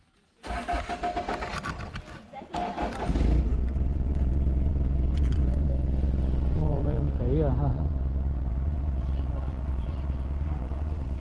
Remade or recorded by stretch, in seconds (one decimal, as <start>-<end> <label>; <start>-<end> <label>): 0.0-3.5 recorded; 3.5-7.2 remade; 7.2-7.7 recorded; 7.7-11.2 remade